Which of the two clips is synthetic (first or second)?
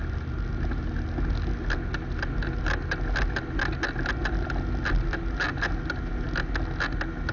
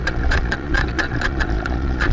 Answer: second